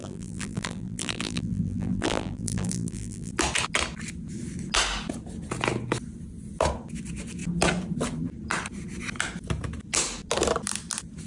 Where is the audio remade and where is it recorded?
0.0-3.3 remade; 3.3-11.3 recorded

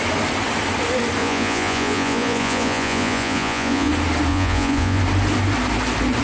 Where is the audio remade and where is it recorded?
0.0-1.2 recorded; 1.2-3.9 remade; 3.9-4.3 recorded; 4.3-5.0 remade; 5.0-6.2 recorded

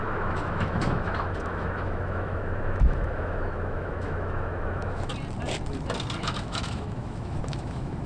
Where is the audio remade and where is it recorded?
0.0-5.1 remade; 5.1-6.2 recorded; 6.2-8.1 remade

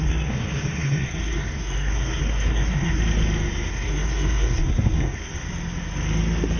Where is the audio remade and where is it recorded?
0.0-3.0 remade; 3.0-3.7 recorded; 3.7-5.3 remade; 5.3-6.6 recorded